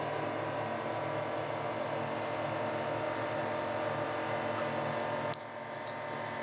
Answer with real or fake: real